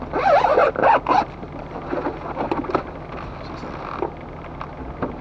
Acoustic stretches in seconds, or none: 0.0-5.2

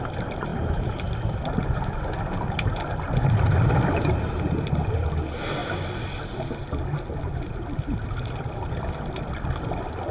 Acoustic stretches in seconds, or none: 0.0-10.1

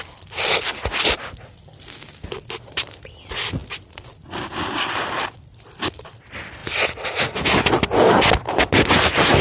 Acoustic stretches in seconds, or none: 0.0-9.4